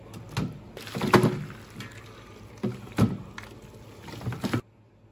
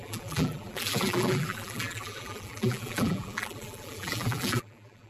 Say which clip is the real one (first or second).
first